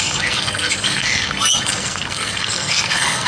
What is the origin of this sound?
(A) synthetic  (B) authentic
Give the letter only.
A